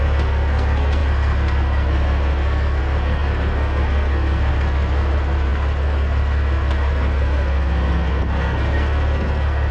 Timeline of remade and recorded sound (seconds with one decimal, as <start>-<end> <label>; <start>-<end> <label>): 0.0-9.7 remade